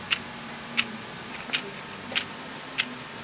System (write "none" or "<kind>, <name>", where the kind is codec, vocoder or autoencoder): none